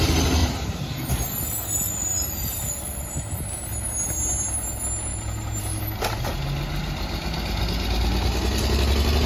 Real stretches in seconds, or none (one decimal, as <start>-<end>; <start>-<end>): 0.0-0.4; 1.1-2.1; 3.0-5.1; 5.8-9.3